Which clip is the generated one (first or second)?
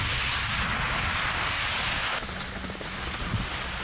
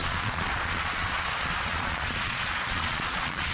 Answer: second